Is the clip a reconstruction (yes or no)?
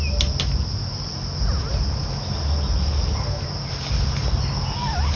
no